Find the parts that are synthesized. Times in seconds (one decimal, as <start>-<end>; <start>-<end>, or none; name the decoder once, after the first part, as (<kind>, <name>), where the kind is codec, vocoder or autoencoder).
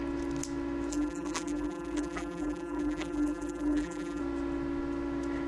0.9-4.2 (vocoder, BigVGAN v2)